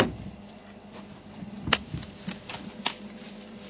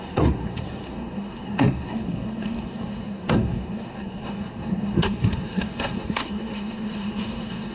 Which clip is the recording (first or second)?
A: first